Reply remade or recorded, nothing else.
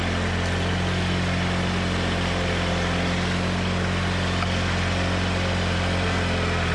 recorded